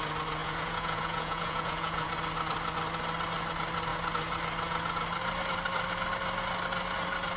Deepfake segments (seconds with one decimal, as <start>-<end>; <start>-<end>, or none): 0.4-2.1